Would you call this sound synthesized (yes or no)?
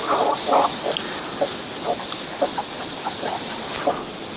no